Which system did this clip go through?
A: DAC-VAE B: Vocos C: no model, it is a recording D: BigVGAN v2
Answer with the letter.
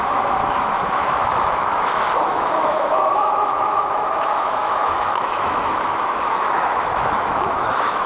A